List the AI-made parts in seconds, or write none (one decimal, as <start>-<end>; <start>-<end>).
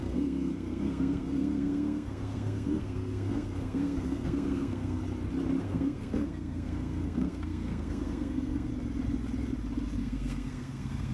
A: 0.0-5.0; 5.6-8.7; 10.0-11.1